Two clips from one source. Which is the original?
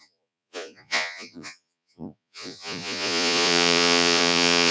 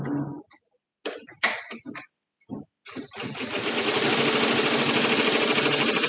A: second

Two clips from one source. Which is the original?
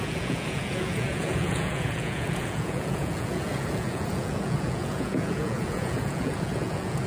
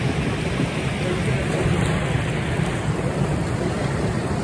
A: second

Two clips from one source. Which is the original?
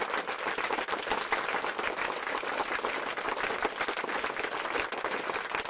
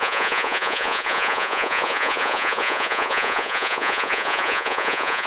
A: first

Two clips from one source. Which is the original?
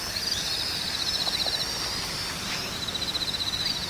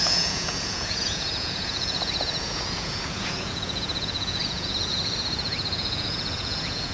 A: first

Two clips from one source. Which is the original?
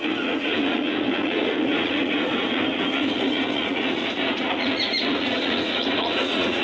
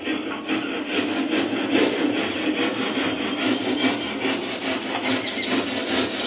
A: second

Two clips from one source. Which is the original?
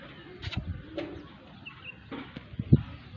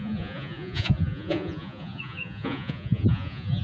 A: first